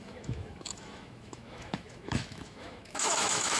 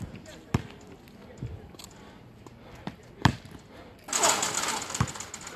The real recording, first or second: second